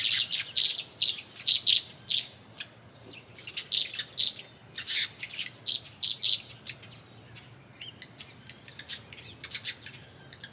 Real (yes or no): yes